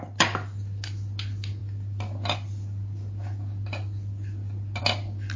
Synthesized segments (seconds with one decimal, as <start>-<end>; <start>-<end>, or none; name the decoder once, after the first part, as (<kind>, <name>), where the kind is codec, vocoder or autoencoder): none